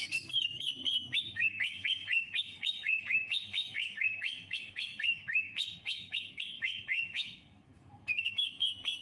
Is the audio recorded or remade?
remade